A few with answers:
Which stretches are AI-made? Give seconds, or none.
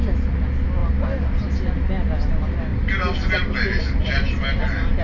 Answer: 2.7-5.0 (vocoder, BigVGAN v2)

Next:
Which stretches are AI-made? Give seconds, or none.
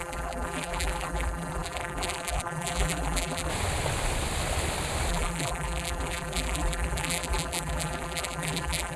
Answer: 0.0-3.5 (vocoder, BigVGAN v2); 5.1-9.0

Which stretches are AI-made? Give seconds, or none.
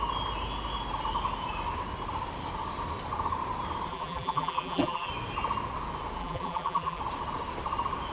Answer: 3.9-5.1 (vocoder, BigVGAN v2); 6.2-7.0